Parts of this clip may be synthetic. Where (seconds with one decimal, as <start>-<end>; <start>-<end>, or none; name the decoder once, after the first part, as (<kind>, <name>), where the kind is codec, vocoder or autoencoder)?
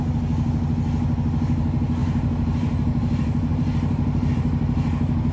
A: 2.0-4.3 (vocoder, BigVGAN v2)